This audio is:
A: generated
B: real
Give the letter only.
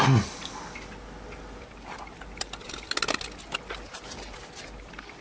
B